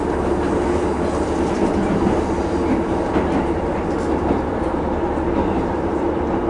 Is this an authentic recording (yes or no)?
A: yes